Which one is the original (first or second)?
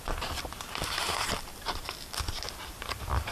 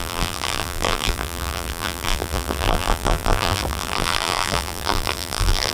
first